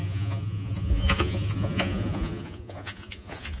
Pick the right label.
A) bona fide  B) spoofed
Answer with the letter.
B